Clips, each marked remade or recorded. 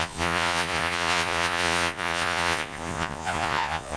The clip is remade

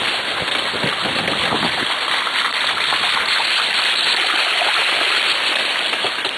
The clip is recorded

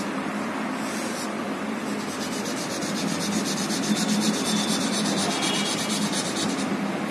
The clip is recorded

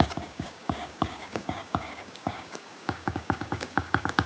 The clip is remade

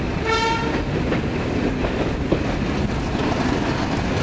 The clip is recorded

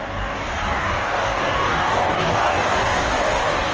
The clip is remade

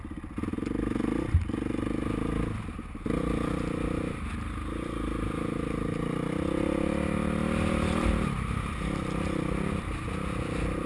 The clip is recorded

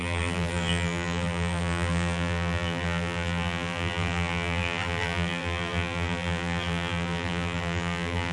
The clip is remade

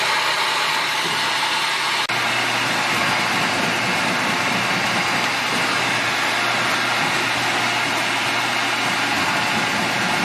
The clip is recorded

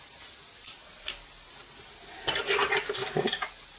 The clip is recorded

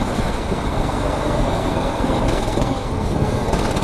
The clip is remade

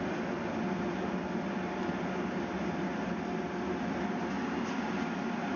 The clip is recorded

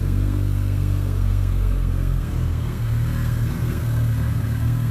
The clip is remade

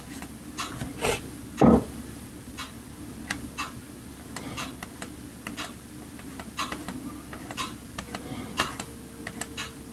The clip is recorded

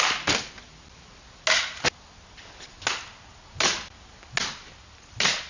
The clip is recorded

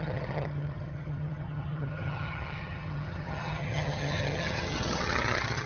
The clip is remade